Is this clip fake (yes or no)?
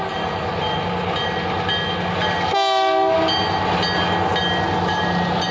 no